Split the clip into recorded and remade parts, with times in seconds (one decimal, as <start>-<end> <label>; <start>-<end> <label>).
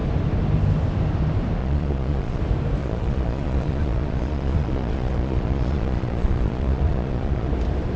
0.0-1.6 recorded; 1.6-2.4 remade; 2.4-2.8 recorded; 2.8-7.5 remade; 7.5-8.0 recorded